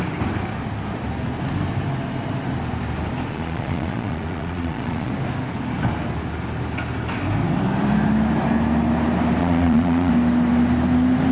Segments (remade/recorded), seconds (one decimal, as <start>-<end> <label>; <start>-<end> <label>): 0.0-3.3 recorded; 3.3-5.1 remade; 5.1-9.4 recorded; 9.4-10.1 remade; 10.1-11.3 recorded